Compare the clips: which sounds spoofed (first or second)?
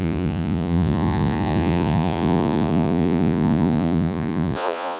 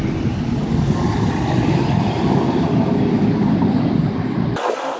first